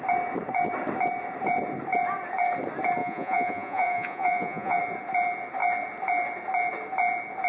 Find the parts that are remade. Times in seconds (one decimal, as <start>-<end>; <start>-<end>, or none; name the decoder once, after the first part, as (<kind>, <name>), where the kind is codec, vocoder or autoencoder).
3.0-4.8 (vocoder, Vocos)